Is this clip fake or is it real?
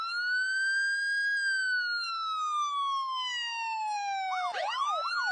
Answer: real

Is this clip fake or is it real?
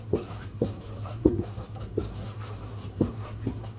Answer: fake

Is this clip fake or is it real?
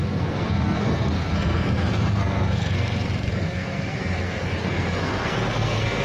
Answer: fake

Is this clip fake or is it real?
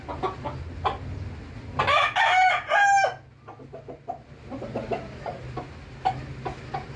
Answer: real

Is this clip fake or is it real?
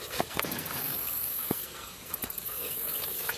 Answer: fake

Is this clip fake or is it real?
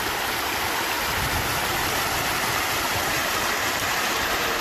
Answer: real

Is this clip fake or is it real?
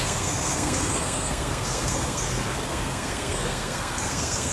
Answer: fake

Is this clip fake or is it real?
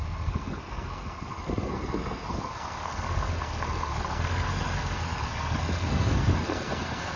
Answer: fake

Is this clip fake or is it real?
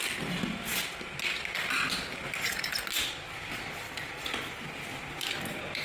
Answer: real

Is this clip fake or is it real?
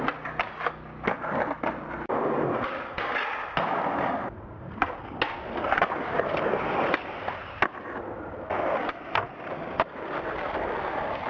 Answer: real